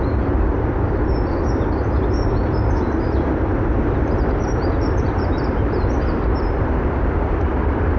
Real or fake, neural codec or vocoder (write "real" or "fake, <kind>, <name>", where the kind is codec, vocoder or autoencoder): fake, vocoder, BigVGAN v2